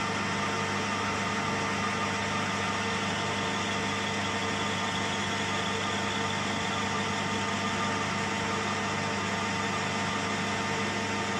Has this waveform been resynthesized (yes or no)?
no